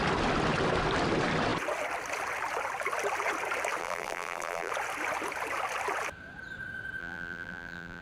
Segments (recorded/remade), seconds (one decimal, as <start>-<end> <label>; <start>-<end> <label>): 0.0-3.8 recorded; 3.8-4.7 remade; 4.7-7.0 recorded; 7.0-8.0 remade